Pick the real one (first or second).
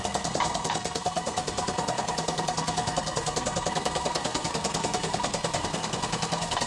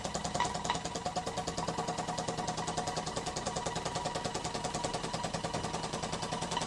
second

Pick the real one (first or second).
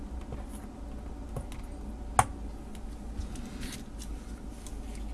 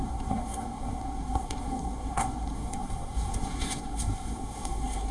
first